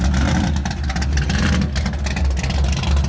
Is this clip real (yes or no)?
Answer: yes